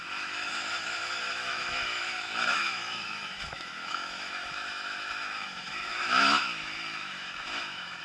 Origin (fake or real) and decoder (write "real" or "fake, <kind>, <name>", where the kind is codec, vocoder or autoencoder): fake, autoencoder, DAC-VAE